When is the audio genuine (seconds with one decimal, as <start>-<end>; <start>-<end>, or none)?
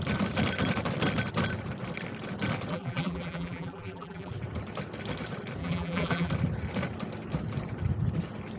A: 0.0-2.7; 4.3-5.6; 6.3-8.6